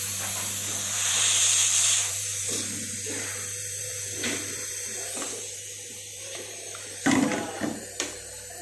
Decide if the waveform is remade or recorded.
remade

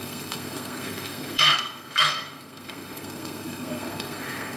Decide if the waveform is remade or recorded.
remade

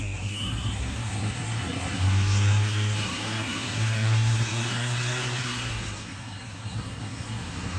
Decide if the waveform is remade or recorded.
remade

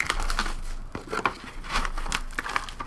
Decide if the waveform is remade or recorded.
recorded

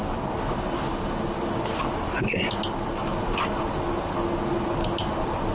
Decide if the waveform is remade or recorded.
recorded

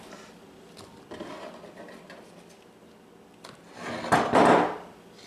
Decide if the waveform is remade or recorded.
recorded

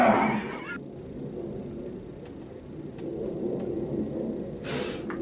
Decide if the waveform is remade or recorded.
recorded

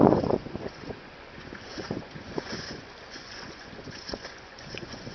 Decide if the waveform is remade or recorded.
remade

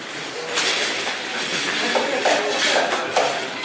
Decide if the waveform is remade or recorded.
recorded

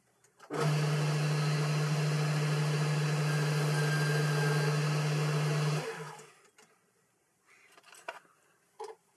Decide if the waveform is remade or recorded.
recorded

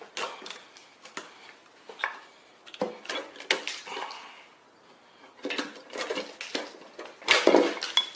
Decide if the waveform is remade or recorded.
recorded